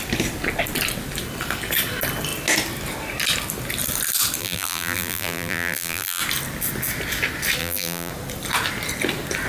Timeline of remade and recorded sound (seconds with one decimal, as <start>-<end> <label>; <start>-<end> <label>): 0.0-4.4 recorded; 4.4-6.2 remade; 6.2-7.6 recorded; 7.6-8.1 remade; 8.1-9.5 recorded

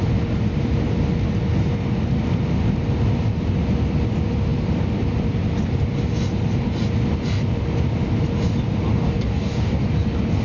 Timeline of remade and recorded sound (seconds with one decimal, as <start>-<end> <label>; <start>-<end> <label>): 0.0-8.9 recorded; 8.9-9.8 remade; 9.8-10.4 recorded

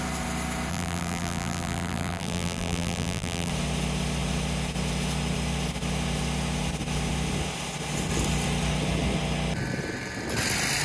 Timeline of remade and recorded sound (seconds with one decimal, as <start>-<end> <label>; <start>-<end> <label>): 0.0-0.7 recorded; 0.7-3.5 remade; 3.5-10.8 recorded

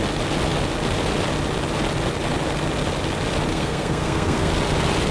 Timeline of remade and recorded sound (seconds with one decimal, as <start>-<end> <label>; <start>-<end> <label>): 0.0-3.5 recorded; 3.5-4.5 remade; 4.5-5.1 recorded

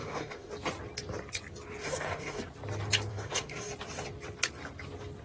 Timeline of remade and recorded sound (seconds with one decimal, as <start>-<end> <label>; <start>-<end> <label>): 0.0-0.5 remade; 0.5-1.8 recorded; 1.8-2.4 remade; 2.4-3.1 recorded; 3.1-3.7 remade; 3.7-5.2 recorded

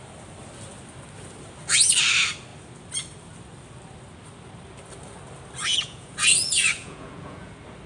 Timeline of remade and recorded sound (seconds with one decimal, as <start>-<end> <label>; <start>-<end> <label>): 0.0-5.7 recorded; 5.7-7.5 remade; 7.5-7.9 recorded

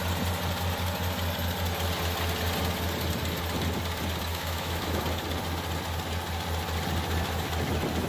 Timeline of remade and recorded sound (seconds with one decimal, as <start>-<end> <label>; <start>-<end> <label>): 0.0-4.3 recorded; 4.3-5.0 remade; 5.0-8.1 recorded

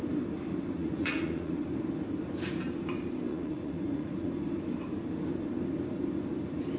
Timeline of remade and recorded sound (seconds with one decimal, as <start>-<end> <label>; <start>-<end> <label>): 0.0-0.8 recorded; 0.8-1.5 remade; 1.5-3.3 recorded; 3.3-4.3 remade; 4.3-6.8 recorded